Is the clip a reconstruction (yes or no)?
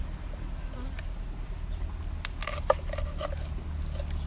no